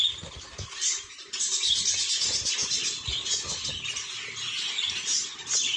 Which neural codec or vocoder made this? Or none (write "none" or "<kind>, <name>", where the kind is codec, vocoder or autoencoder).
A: none